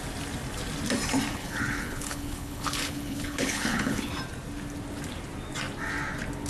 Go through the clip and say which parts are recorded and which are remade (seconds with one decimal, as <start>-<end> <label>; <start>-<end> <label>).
0.0-1.3 recorded; 1.3-4.1 remade; 4.1-6.5 recorded